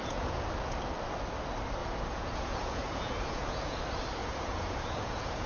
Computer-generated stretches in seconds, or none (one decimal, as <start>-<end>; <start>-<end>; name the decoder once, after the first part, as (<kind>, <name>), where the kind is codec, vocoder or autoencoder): 0.0-0.9 (vocoder, Vocos); 1.8-3.8; 4.2-5.5